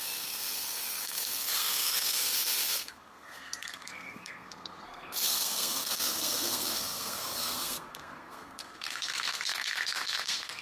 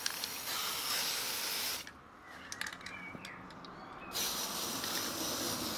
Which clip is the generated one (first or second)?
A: first